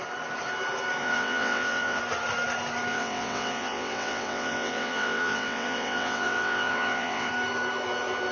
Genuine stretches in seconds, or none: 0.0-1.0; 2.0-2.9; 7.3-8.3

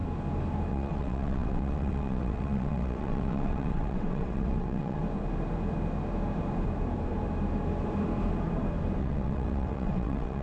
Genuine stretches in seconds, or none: 0.0-0.7; 5.0-9.0

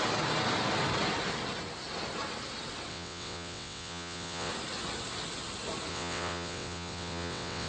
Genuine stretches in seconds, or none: 0.0-2.9; 4.5-5.9

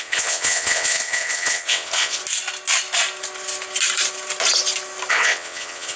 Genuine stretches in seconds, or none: 2.2-5.1